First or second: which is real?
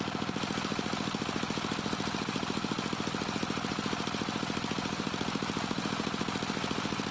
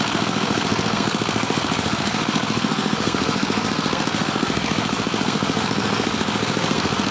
first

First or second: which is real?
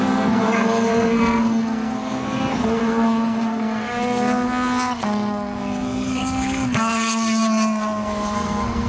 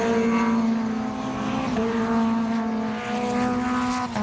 second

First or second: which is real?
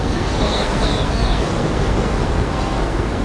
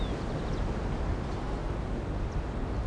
second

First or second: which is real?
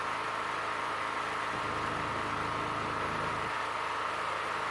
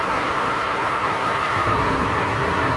first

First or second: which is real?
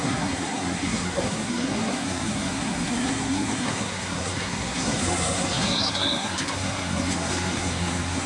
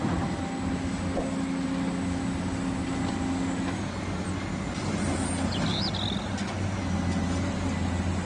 second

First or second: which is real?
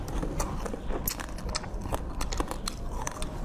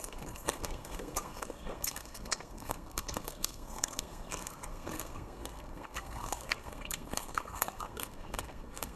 first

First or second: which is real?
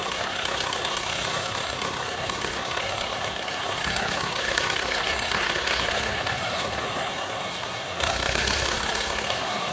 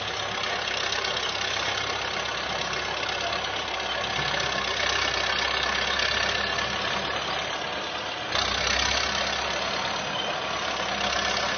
second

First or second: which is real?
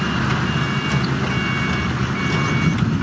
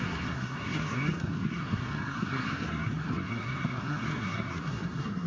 first